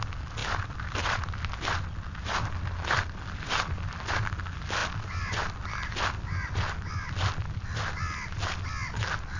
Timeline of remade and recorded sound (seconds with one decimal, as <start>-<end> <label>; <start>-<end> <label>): 0.0-9.4 recorded